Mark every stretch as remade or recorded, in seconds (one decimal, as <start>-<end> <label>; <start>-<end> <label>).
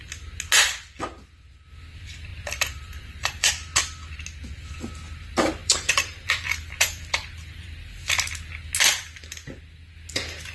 0.0-2.3 recorded; 2.3-3.5 remade; 3.5-5.6 recorded; 5.6-8.0 remade; 8.0-10.5 recorded